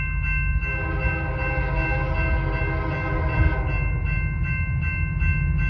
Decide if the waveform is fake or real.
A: real